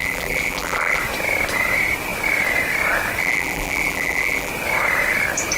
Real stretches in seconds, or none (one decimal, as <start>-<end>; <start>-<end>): 1.0-3.2; 4.5-5.6